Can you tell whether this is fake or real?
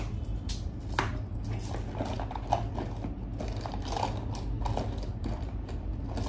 real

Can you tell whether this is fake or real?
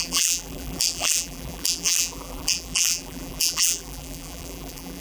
fake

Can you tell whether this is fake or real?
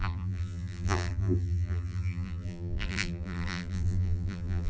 fake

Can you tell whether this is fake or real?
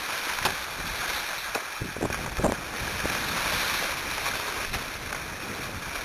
real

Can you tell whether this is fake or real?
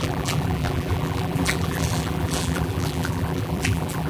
fake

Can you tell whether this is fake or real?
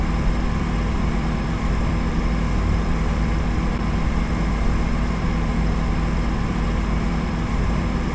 fake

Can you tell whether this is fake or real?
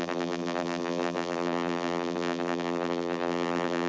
fake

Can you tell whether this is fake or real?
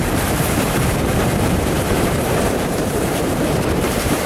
fake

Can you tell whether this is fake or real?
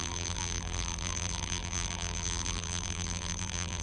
fake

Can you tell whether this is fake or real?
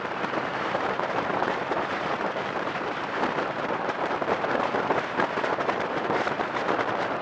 fake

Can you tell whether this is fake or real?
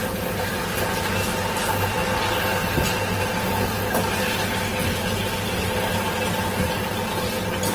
real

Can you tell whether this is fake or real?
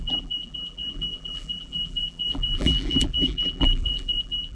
fake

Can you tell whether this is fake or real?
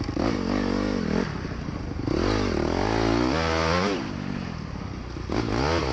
real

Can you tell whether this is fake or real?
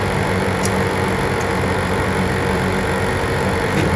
fake